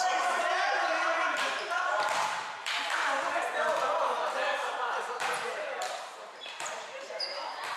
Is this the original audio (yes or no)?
no